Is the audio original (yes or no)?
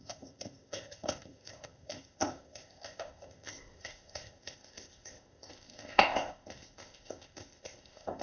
no